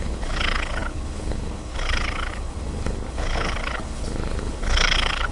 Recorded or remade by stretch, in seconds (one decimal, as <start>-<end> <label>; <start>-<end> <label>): 0.0-5.3 remade